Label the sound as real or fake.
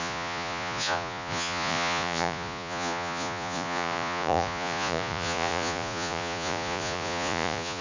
fake